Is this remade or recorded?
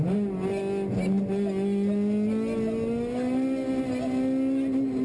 recorded